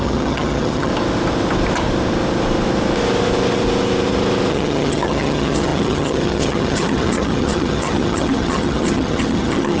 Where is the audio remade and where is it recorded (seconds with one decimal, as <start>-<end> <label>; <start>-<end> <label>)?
0.0-0.9 remade; 0.9-4.5 recorded; 4.5-9.8 remade